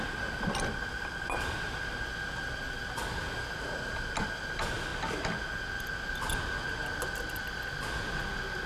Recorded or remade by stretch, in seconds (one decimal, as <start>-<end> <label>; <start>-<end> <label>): 0.0-8.7 recorded